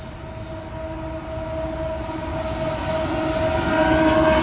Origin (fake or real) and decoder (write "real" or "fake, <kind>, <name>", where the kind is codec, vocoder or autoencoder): real